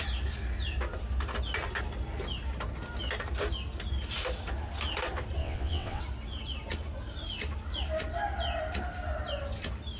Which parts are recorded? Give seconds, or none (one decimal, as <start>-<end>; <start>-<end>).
0.0-5.4; 6.0-10.0